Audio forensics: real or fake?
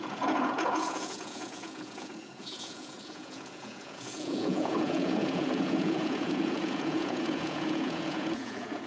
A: fake